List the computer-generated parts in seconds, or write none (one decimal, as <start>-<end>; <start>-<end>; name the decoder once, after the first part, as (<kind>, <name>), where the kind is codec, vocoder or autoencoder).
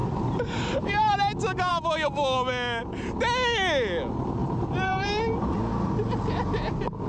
0.0-1.1 (vocoder, BigVGAN v2); 4.4-5.7